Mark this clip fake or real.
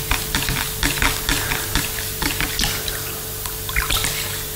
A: real